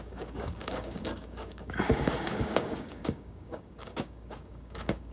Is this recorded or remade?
remade